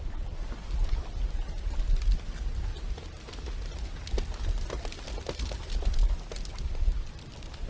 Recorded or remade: recorded